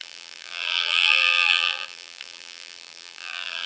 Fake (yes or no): yes